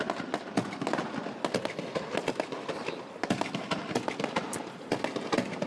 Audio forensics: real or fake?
real